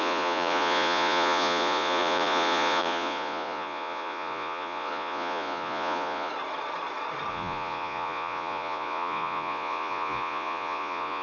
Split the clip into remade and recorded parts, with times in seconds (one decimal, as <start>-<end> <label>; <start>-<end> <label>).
0.0-6.3 remade; 6.3-7.3 recorded; 7.3-11.2 remade